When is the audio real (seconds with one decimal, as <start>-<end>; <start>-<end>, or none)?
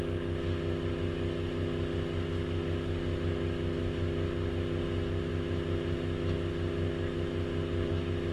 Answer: 0.0-8.3